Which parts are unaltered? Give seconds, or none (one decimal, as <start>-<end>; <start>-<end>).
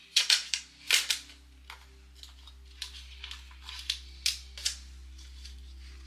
0.0-6.1